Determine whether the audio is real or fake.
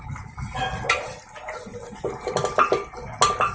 real